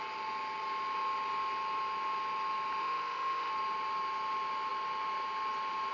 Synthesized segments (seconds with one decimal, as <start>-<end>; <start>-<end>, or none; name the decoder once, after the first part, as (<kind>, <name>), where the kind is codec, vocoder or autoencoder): 2.8-3.5 (autoencoder, DAC-VAE)